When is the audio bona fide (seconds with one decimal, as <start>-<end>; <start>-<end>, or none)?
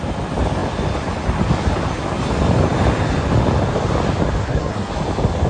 0.0-4.4; 4.9-5.5